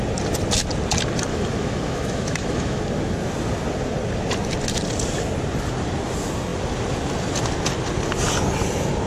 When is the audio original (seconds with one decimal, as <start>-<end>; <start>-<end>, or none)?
0.0-1.3; 2.8-9.1